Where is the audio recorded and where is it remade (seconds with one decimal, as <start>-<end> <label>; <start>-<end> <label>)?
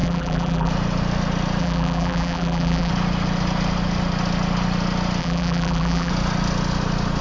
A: 0.0-0.7 remade; 0.7-1.6 recorded; 1.6-2.9 remade; 2.9-5.2 recorded; 5.2-6.1 remade; 6.1-7.2 recorded